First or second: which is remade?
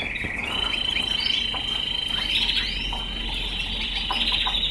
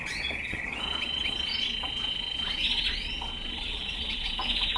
second